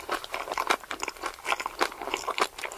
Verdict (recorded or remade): remade